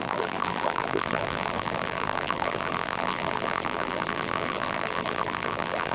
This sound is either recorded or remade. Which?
remade